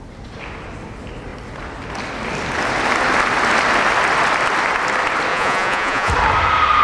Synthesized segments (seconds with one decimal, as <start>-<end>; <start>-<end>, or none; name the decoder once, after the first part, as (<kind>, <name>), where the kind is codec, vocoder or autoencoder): 5.3-6.1 (vocoder, Vocos)